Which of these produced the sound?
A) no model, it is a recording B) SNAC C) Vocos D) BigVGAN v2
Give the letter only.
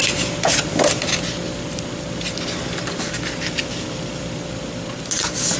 A